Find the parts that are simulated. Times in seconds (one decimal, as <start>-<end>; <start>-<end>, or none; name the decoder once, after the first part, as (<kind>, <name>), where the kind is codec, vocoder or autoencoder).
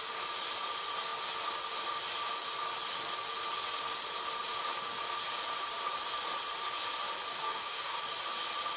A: 7.3-8.0 (codec, DAC)